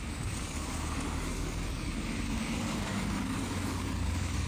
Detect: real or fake fake